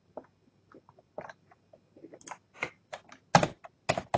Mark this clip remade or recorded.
recorded